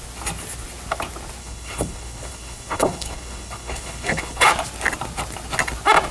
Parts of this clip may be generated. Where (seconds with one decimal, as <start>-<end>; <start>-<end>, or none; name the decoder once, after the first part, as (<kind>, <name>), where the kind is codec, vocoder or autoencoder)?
1.4-4.5 (codec, HILCodec)